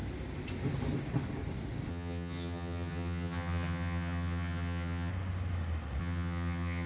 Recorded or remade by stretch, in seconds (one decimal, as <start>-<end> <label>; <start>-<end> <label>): 0.0-1.9 recorded; 1.9-5.1 remade; 5.1-6.0 recorded; 6.0-6.9 remade